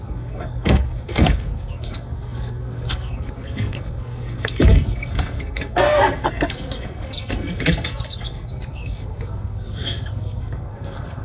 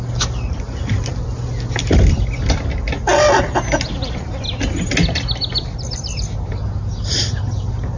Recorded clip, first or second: second